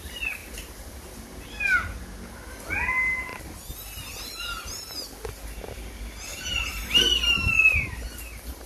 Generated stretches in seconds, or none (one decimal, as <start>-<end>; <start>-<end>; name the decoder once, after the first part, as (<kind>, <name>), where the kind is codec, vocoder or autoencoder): 0.4-1.4 (vocoder, BigVGAN v2); 6.3-7.5

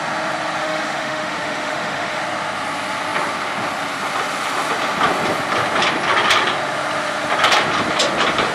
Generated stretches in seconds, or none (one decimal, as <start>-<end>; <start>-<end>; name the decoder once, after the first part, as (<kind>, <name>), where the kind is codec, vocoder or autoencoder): 0.6-2.2 (autoencoder, DAC-VAE)